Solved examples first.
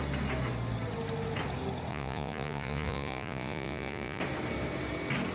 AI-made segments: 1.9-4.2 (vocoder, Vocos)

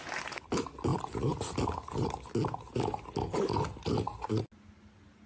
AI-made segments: none

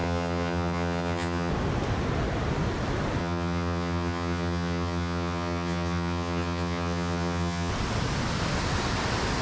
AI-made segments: 0.0-1.5 (vocoder, HiFi-GAN); 3.2-7.7